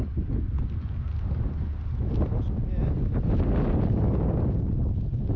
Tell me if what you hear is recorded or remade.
recorded